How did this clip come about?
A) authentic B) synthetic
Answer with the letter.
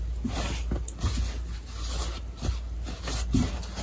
A